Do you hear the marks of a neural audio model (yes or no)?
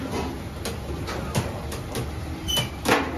no